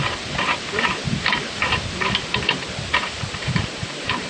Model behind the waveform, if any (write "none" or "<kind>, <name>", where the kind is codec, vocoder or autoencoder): vocoder, BigVGAN v2